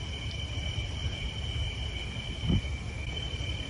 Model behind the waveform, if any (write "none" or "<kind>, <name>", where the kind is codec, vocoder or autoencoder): none